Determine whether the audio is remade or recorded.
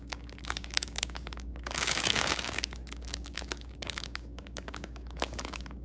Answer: remade